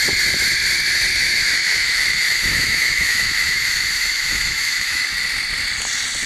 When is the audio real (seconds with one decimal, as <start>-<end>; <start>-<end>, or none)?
0.0-1.2; 5.0-6.3